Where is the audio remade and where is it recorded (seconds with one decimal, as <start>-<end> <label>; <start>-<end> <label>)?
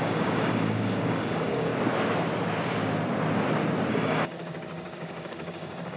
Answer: 0.0-1.7 remade; 1.7-3.9 recorded; 3.9-6.0 remade